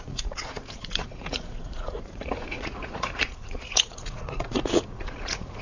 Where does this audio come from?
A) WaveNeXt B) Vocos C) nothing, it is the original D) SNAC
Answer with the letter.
B